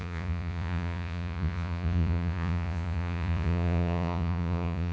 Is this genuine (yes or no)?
no